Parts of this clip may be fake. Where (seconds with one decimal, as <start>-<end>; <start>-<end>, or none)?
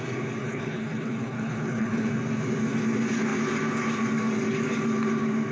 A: 0.4-2.1